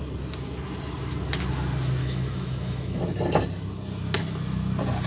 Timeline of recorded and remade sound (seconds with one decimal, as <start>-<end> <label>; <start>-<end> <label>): 0.0-2.0 recorded; 2.0-3.0 remade; 3.0-5.1 recorded